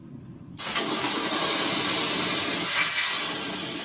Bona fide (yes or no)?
yes